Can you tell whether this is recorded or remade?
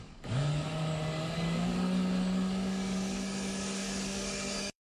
remade